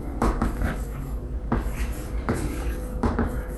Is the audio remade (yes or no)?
yes